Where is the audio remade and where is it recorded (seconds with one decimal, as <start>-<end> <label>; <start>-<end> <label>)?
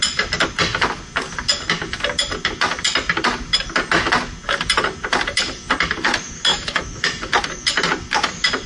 0.0-6.5 recorded; 6.5-7.1 remade; 7.1-8.7 recorded